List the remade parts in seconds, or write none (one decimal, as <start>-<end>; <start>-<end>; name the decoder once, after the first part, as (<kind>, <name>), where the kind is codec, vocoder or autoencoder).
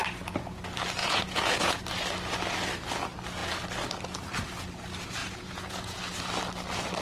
1.0-1.8 (vocoder, Vocos); 5.2-6.0